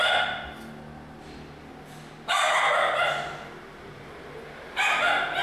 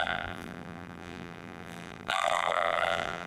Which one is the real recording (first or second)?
first